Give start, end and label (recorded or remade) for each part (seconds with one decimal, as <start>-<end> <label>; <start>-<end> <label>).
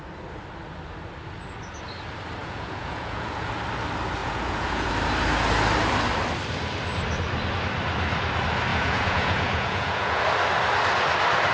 0.0-2.4 recorded; 2.4-3.5 remade; 3.5-4.2 recorded; 4.2-4.9 remade; 4.9-8.7 recorded; 8.7-10.2 remade; 10.2-11.5 recorded